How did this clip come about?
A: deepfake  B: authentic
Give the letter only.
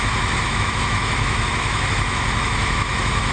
A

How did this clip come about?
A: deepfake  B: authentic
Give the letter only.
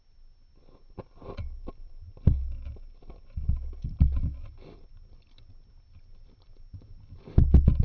B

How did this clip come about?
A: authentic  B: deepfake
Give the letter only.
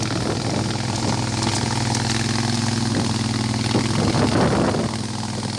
A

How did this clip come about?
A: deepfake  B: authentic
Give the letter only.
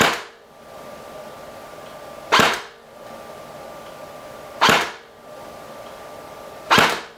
B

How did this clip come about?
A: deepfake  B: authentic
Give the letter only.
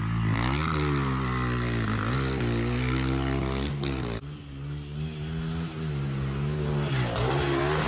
B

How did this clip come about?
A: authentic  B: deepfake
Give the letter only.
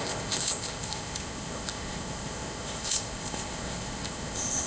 B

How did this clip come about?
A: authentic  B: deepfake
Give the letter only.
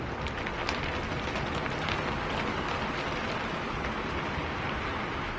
A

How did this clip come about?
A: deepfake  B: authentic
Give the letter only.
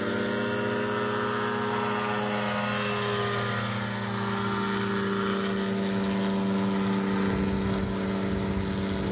B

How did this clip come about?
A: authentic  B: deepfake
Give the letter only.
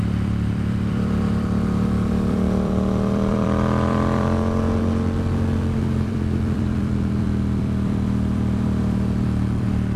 B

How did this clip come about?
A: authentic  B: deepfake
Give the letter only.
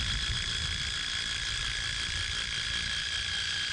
A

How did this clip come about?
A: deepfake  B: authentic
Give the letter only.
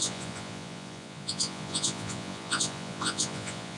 A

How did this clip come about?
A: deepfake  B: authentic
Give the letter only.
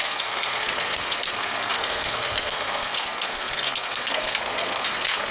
A